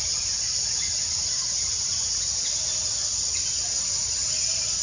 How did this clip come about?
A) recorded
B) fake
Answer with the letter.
A